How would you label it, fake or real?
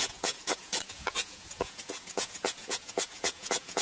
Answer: fake